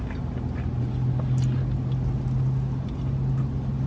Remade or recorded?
recorded